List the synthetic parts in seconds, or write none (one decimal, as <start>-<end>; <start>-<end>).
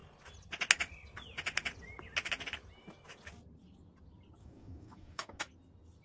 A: 4.4-5.4